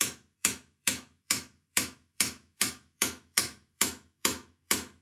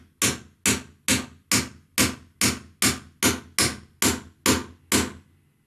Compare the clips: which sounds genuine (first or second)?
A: second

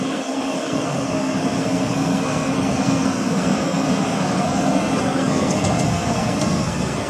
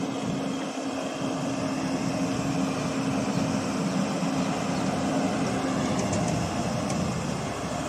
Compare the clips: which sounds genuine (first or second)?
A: second